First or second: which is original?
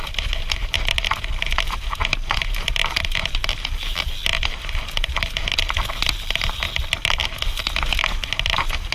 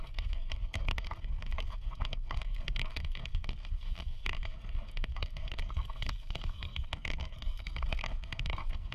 first